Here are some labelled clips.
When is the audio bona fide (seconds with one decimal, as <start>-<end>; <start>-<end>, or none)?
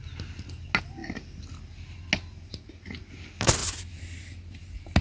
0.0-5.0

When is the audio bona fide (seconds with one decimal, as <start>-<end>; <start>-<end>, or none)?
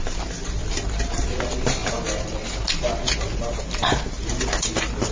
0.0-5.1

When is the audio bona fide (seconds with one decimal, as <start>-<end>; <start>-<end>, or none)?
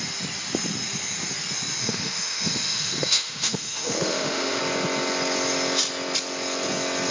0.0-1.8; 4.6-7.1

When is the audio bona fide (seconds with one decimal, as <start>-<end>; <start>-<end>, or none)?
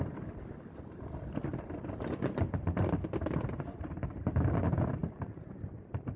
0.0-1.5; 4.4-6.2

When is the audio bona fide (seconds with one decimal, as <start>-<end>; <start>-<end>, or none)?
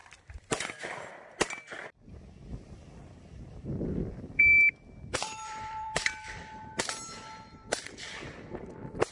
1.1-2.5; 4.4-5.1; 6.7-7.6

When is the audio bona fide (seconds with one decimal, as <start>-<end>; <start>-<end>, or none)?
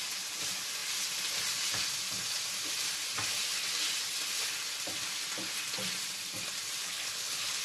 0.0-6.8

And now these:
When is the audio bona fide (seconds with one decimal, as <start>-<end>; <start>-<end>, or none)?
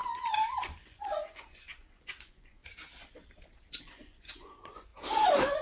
0.0-0.6; 2.6-3.8; 4.9-5.6